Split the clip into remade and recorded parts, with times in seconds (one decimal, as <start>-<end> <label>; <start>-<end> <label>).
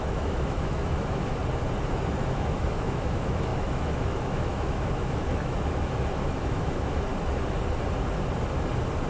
0.0-1.4 remade; 1.4-2.1 recorded; 2.1-7.1 remade; 7.1-9.1 recorded